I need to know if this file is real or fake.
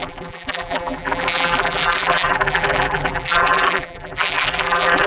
fake